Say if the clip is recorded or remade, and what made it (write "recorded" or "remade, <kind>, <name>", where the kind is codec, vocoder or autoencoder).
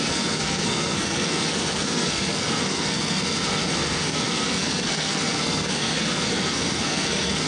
remade, codec, SNAC